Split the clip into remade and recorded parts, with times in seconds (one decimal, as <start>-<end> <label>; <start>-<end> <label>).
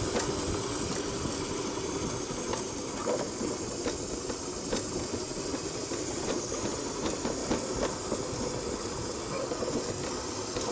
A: 0.0-10.7 recorded